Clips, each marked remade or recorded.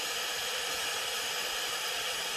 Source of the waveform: recorded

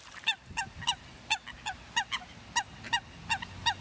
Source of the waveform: recorded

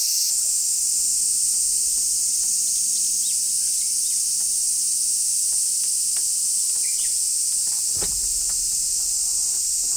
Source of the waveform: recorded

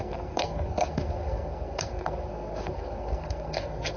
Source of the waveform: remade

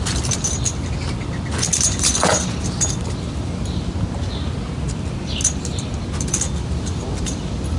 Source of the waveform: recorded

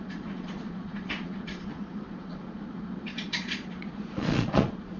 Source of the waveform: remade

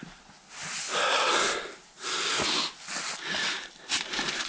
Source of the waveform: recorded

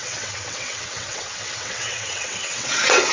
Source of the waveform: remade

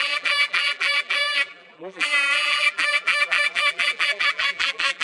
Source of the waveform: remade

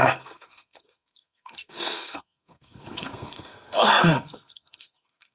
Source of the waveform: remade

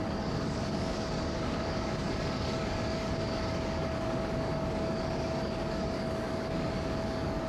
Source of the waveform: remade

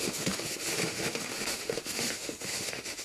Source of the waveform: remade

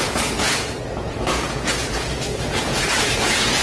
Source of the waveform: remade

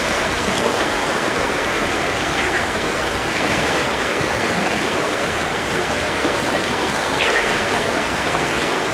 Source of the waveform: remade